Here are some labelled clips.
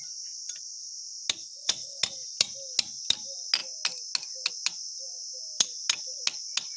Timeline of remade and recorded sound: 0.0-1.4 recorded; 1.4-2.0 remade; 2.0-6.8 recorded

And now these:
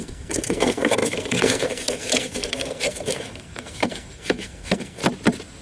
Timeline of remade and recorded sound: 0.0-5.0 remade; 5.0-5.6 recorded

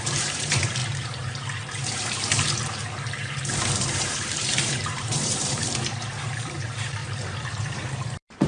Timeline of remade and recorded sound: 0.0-2.3 remade; 2.3-3.2 recorded; 3.2-7.0 remade; 7.0-7.6 recorded; 7.6-8.5 remade

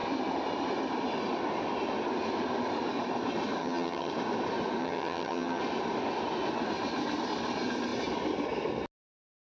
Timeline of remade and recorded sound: 0.0-3.6 recorded; 3.6-4.1 remade; 4.1-4.8 recorded; 4.8-5.6 remade; 5.6-9.4 recorded

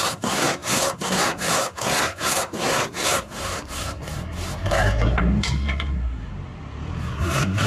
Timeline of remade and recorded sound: 0.0-6.3 remade; 6.3-7.0 recorded; 7.0-7.7 remade